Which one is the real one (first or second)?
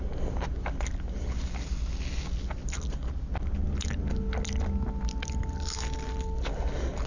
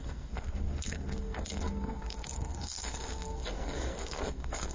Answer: first